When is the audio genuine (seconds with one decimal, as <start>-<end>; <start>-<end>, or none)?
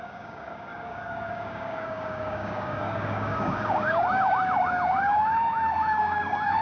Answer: none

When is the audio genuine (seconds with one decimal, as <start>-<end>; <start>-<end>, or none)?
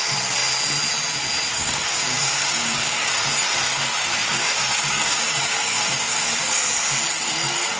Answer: 0.0-1.5; 3.1-4.2; 6.6-7.8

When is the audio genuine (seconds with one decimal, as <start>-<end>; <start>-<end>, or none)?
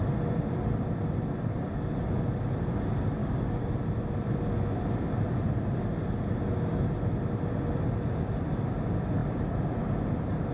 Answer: 0.0-3.2; 3.7-10.5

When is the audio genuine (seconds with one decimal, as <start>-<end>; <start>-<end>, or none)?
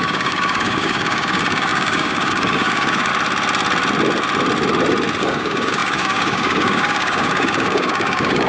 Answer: 3.1-5.2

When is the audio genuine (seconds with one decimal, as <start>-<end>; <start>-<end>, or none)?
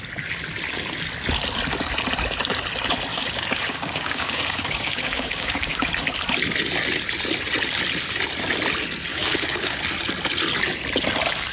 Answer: 0.0-3.1; 5.9-9.1; 9.8-11.5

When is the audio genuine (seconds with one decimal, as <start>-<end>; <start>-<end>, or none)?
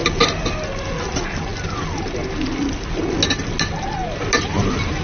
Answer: 0.0-5.0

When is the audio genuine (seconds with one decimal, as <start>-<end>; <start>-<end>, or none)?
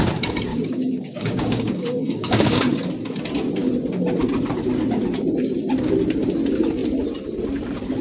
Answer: 0.0-0.5; 2.6-8.0